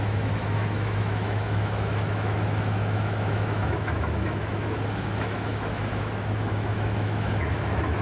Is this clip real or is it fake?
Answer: fake